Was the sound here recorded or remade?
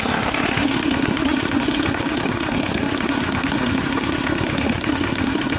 remade